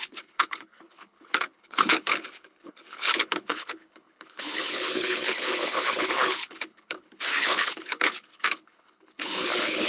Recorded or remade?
remade